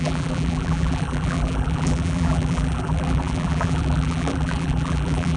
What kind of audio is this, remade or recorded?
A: remade